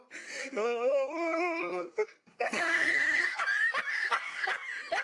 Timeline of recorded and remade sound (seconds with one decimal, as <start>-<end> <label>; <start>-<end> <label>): 0.0-0.4 recorded; 0.4-3.4 remade; 3.4-3.9 recorded; 3.9-4.5 remade; 4.5-5.0 recorded